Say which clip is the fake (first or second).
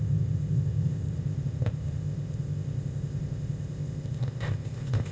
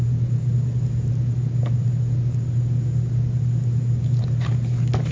first